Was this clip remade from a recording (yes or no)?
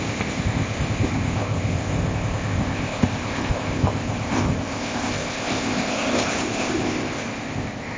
yes